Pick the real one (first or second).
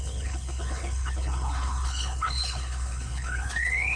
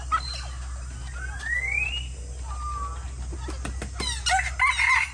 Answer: second